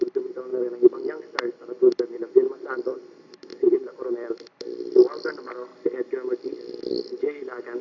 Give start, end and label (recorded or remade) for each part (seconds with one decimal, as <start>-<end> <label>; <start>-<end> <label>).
0.0-5.7 remade; 5.7-6.9 recorded; 6.9-7.8 remade